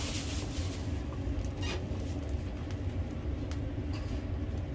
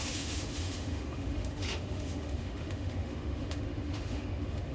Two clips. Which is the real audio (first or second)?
first